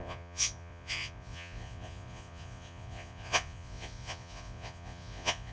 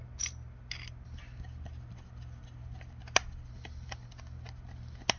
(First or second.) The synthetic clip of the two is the first